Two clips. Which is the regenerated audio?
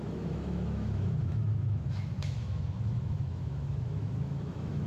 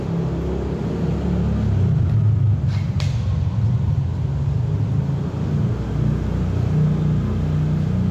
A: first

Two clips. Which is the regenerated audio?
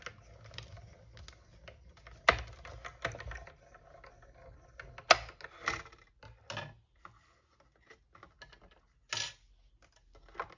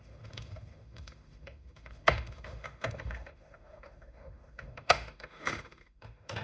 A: second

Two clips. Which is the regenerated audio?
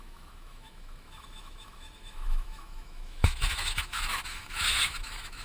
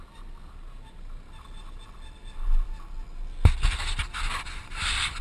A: first